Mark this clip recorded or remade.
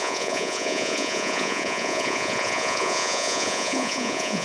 remade